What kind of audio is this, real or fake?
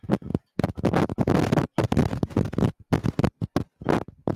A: real